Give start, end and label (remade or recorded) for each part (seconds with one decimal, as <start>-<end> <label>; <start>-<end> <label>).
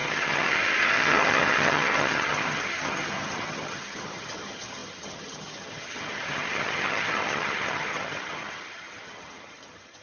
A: 0.0-10.0 remade